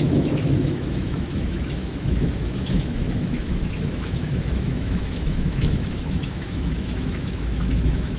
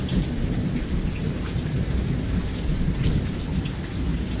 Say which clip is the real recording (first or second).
second